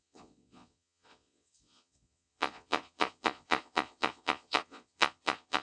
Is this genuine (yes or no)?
no